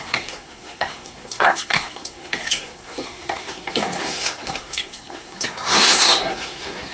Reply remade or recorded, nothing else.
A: remade